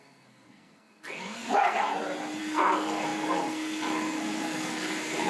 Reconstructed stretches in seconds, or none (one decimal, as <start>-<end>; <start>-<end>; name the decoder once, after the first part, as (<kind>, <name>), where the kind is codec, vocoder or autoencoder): 0.0-1.9 (codec, SNAC); 2.4-5.3